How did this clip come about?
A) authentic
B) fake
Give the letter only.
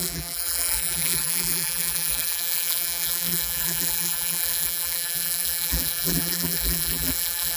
B